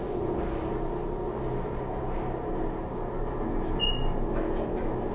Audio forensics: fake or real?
real